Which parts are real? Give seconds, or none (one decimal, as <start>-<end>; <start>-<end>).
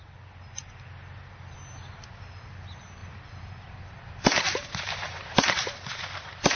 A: 0.0-3.0